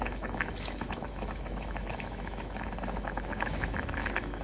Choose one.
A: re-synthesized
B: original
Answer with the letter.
A